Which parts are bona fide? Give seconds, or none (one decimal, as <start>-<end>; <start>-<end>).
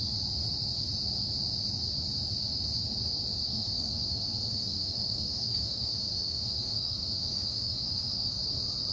0.0-3.5; 8.4-8.9